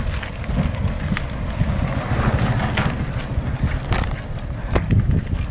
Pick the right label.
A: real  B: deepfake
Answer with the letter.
A